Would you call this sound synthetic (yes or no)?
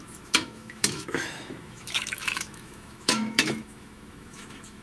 yes